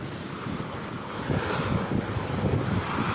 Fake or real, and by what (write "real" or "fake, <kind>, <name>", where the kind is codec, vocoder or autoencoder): real